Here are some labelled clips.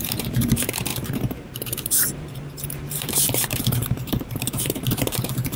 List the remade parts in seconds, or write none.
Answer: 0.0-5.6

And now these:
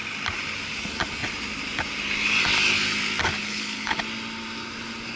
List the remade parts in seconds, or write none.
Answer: 3.4-4.0

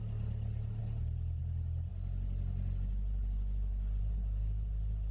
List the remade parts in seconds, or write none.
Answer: none

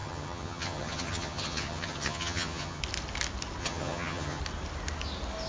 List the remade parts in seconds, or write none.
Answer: 0.0-2.8; 3.6-4.4

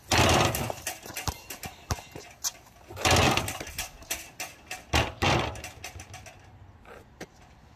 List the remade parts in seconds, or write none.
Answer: none

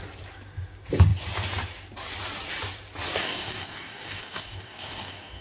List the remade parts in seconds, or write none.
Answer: 3.2-5.4

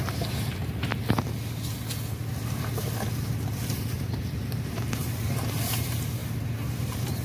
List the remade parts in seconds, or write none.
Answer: 0.0-0.9; 3.1-6.2; 6.7-7.2

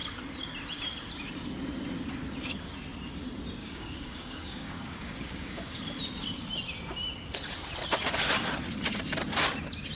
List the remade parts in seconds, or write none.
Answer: 3.6-5.8